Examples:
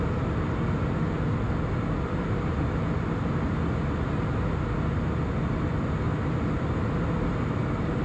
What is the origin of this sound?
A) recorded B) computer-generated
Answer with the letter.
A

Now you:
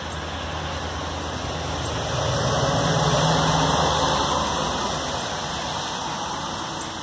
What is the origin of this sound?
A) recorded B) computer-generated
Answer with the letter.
A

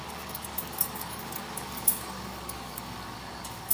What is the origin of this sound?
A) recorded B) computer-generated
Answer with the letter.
B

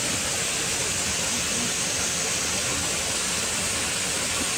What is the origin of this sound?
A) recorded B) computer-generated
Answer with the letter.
A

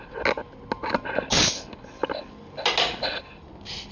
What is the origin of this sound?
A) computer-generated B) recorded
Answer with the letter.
B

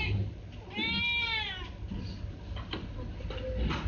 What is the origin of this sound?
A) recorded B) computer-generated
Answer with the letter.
A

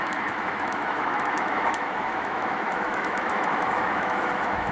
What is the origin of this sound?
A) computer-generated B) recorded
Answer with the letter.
A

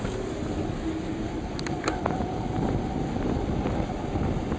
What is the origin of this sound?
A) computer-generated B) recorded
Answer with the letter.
B